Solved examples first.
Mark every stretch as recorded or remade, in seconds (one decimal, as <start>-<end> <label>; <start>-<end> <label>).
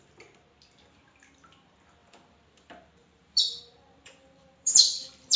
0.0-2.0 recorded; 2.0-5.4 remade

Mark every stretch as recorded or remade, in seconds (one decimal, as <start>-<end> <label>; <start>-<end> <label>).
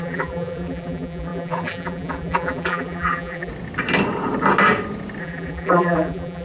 0.0-3.5 remade; 3.5-5.2 recorded; 5.2-6.4 remade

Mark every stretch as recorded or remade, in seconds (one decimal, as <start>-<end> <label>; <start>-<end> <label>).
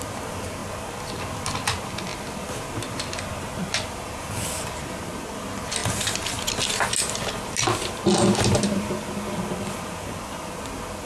0.0-11.1 recorded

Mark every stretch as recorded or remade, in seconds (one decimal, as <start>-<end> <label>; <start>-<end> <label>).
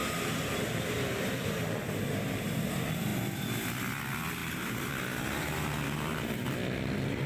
0.0-2.6 remade; 2.6-4.4 recorded; 4.4-4.9 remade; 4.9-7.3 recorded